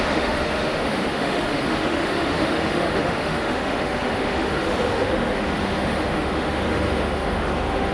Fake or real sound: fake